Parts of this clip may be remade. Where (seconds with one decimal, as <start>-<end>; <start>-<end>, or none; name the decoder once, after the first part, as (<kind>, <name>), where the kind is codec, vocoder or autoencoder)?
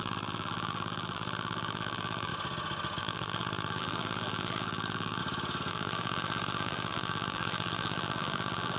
0.0-2.3 (vocoder, BigVGAN v2); 3.0-5.2; 5.7-8.8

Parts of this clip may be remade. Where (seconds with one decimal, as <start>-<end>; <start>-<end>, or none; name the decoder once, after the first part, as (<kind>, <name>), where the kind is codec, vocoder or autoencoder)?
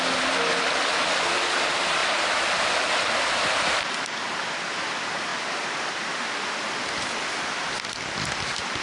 0.0-2.0 (vocoder, BigVGAN v2); 3.1-5.3; 5.9-8.8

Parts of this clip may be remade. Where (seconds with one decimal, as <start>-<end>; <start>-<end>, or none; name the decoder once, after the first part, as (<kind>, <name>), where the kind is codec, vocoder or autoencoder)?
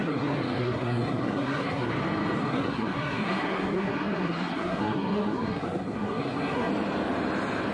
0.0-1.9 (codec, SNAC); 2.4-6.7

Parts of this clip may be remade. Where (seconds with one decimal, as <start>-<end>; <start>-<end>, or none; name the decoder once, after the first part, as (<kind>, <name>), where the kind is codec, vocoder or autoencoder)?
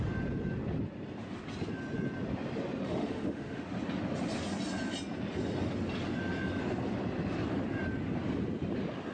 2.8-3.6 (autoencoder, DAC-VAE)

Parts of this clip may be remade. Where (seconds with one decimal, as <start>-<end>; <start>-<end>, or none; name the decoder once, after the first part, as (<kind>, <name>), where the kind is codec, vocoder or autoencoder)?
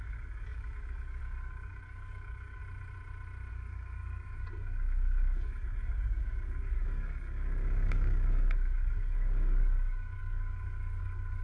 0.0-2.6 (codec, DAC); 3.5-11.4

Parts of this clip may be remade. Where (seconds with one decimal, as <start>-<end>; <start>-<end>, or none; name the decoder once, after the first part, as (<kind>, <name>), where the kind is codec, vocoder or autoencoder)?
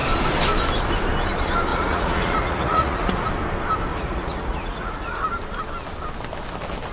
1.7-3.3 (vocoder, Vocos); 3.9-5.3